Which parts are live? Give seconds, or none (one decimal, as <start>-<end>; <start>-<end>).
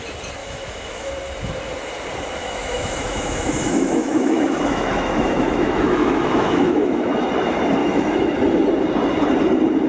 0.0-0.4; 1.1-2.4; 7.3-7.8; 8.3-9.9